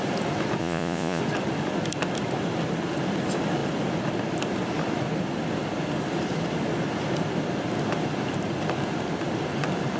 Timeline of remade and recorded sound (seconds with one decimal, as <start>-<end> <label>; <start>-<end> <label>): 0.0-0.6 recorded; 0.6-1.2 remade; 1.2-10.0 recorded